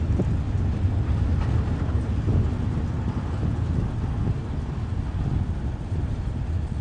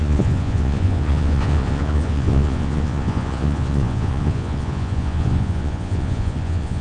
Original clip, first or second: first